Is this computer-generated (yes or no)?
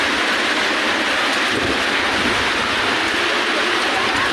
no